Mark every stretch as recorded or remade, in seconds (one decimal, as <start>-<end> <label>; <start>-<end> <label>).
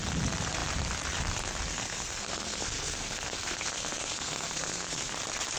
0.0-1.7 recorded; 1.7-5.1 remade; 5.1-5.6 recorded